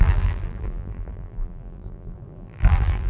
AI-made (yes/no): yes